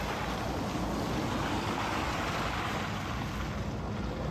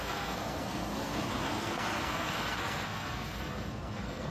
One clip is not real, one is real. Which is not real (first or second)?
second